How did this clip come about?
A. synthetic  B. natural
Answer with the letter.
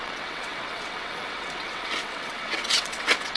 A